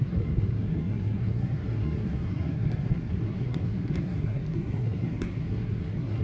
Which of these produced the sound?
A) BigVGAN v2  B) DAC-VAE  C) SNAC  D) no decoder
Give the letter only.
C